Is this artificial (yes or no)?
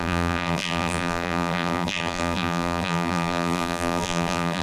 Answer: yes